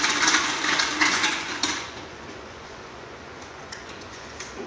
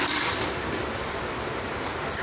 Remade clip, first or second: first